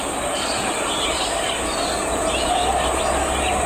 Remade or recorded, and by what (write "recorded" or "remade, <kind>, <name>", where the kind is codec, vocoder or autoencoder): recorded